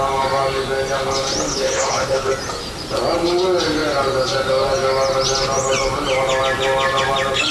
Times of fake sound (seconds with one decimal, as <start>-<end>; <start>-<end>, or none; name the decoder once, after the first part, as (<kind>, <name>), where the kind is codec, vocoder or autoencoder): 1.5-2.3 (codec, HILCodec)